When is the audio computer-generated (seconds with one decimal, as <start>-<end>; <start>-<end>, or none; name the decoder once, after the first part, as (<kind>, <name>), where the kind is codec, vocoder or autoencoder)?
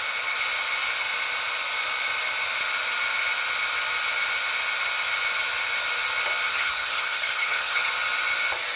6.5-7.9 (codec, HILCodec)